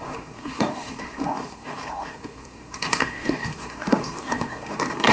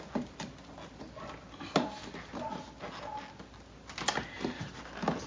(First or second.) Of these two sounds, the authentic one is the second